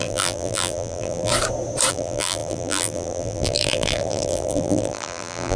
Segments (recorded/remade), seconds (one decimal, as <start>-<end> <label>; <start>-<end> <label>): 0.0-1.3 remade; 1.3-1.9 recorded; 1.9-5.6 remade